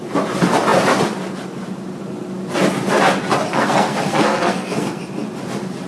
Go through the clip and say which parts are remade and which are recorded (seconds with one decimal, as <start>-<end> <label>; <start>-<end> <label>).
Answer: 0.0-3.5 recorded; 3.5-5.0 remade; 5.0-5.9 recorded

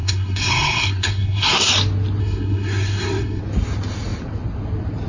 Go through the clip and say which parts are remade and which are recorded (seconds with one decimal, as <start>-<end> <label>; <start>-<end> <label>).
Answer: 0.0-1.7 remade; 1.7-2.2 recorded; 2.2-3.4 remade; 3.4-5.1 recorded